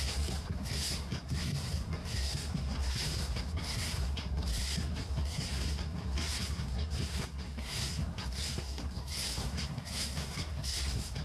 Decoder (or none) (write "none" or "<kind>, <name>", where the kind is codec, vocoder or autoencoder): codec, SNAC